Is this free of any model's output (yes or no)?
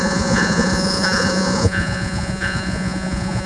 no